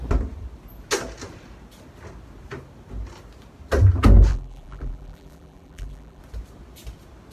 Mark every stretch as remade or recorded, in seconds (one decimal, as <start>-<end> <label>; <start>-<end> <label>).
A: 0.0-4.3 recorded; 4.3-6.2 remade; 6.2-7.3 recorded